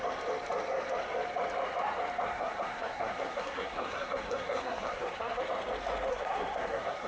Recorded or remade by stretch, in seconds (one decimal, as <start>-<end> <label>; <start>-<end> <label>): 0.0-2.3 recorded; 2.3-5.4 remade; 5.4-6.1 recorded; 6.1-7.1 remade